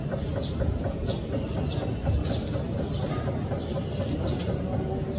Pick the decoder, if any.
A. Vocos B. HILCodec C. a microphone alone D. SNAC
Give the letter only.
C